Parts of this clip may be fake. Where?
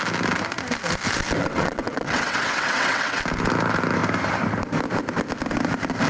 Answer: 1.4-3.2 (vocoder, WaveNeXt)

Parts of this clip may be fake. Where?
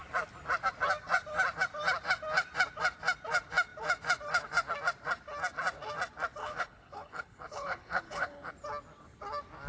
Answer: 6.4-8.5 (codec, HILCodec)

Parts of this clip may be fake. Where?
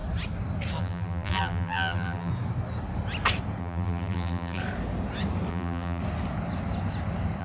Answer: 0.8-2.3 (vocoder, BigVGAN v2); 3.6-4.6; 5.5-6.0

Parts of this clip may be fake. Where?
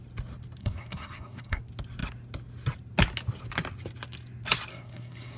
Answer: 0.6-1.6 (codec, SNAC); 4.7-5.4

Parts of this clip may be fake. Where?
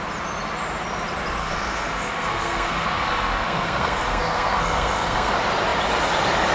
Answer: 1.4-5.3 (codec, SNAC)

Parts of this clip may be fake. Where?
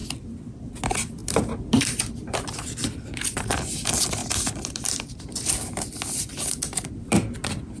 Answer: 0.0-0.7 (vocoder, BigVGAN v2); 1.2-3.6; 4.2-5.5